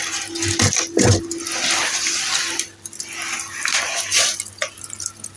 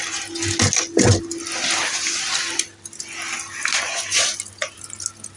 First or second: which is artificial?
first